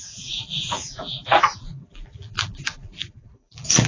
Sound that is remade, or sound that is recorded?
remade